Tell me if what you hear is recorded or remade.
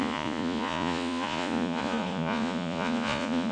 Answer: remade